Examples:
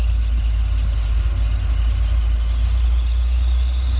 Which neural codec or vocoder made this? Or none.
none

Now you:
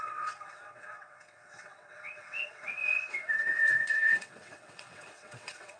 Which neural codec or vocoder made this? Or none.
vocoder, WaveNeXt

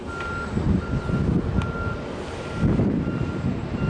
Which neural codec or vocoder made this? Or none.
none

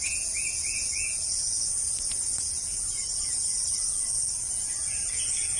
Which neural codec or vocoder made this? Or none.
vocoder, Vocos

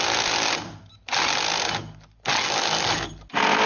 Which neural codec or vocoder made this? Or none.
none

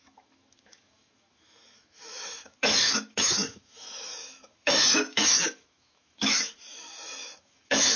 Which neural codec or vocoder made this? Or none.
autoencoder, DAC-VAE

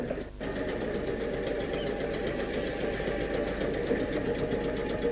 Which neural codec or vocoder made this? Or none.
none